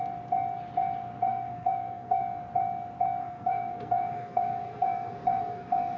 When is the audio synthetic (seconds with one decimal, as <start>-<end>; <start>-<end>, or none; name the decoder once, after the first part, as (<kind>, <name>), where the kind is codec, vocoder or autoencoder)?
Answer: 1.3-2.2 (codec, SNAC); 3.2-6.0